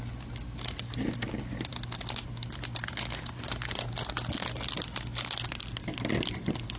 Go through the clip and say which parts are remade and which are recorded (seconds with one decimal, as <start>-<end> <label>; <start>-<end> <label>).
0.0-6.8 recorded